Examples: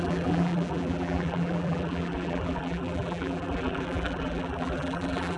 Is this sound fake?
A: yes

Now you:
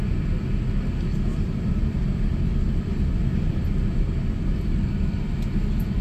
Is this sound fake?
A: no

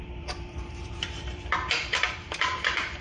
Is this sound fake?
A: yes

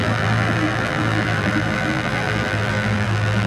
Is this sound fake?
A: yes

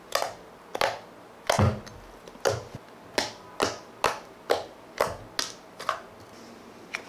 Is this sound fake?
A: no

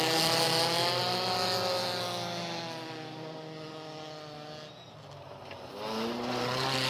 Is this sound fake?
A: no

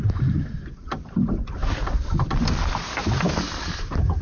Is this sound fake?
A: yes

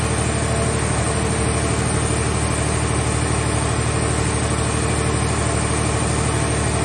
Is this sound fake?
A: no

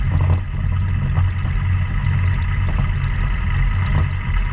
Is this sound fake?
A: no